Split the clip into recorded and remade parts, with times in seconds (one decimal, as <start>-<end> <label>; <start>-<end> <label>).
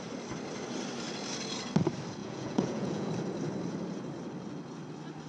0.0-2.2 recorded; 2.2-3.1 remade; 3.1-5.3 recorded